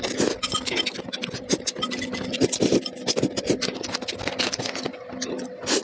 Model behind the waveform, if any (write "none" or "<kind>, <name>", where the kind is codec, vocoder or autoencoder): none